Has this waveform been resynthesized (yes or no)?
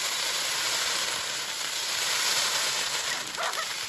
yes